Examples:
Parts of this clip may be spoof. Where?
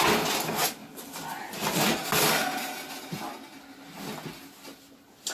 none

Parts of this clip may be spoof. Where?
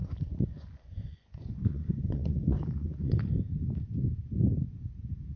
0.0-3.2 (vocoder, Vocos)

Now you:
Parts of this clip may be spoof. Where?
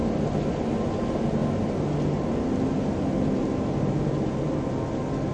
none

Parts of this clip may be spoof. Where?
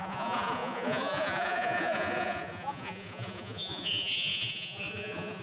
0.0-5.4 (vocoder, Vocos)